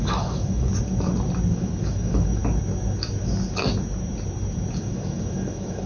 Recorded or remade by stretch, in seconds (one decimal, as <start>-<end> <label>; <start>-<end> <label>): 0.0-0.7 remade; 0.7-1.5 recorded; 1.5-2.4 remade; 2.4-4.8 recorded; 4.8-5.9 remade